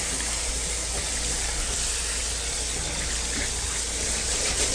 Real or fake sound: real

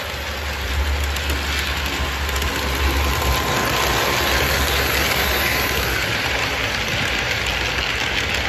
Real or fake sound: real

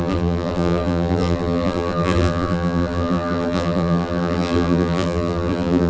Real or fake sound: fake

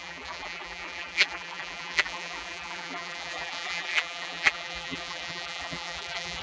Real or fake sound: fake